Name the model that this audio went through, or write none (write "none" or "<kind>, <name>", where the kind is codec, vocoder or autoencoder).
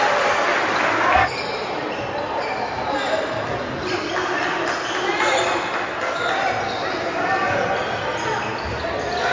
none